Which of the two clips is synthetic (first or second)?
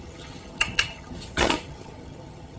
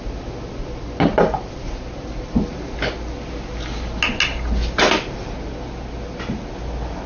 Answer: first